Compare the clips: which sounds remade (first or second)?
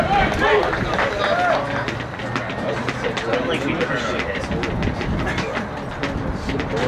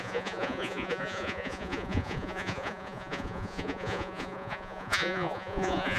second